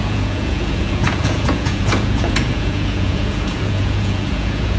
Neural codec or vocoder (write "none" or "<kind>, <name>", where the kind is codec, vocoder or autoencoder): vocoder, Vocos